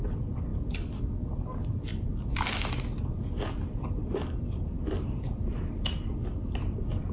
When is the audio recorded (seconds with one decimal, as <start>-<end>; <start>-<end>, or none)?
0.0-7.1